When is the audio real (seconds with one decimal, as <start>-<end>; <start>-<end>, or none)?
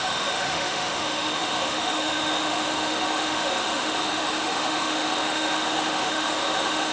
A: none